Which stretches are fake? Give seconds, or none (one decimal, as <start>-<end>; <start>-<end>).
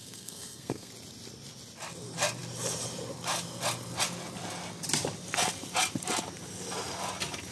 0.0-0.9